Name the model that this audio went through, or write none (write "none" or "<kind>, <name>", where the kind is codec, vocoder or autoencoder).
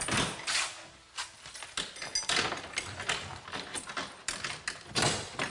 none